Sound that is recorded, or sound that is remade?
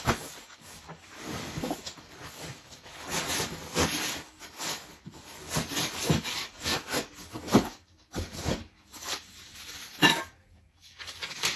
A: remade